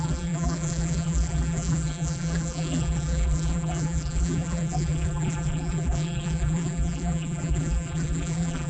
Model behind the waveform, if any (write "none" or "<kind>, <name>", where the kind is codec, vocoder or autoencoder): vocoder, BigVGAN v2